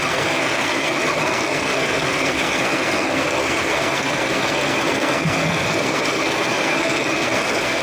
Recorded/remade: remade